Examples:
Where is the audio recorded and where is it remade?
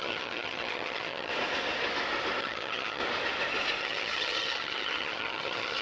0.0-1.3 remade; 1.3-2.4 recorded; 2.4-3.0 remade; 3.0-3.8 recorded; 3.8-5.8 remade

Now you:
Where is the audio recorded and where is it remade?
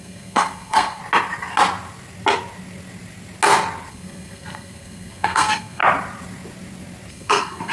0.0-1.0 remade; 1.0-3.9 recorded; 3.9-5.8 remade; 5.8-7.1 recorded; 7.1-7.7 remade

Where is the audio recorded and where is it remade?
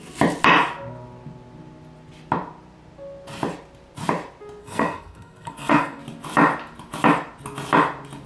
0.0-4.6 recorded; 4.6-6.0 remade; 6.0-8.3 recorded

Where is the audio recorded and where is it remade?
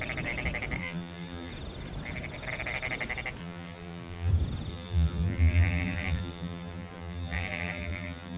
0.0-0.8 recorded; 0.8-1.5 remade; 1.5-3.4 recorded; 3.4-4.3 remade; 4.3-4.7 recorded; 4.7-8.4 remade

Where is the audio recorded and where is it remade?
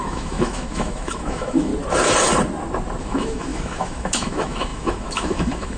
0.0-1.7 remade; 1.7-3.0 recorded; 3.0-5.8 remade